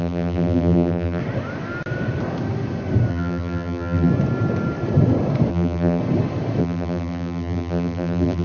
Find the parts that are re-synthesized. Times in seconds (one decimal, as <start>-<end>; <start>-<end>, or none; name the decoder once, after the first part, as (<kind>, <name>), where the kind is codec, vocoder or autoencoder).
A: 0.0-1.2 (vocoder, BigVGAN v2); 3.1-4.1; 5.5-6.0; 6.6-8.4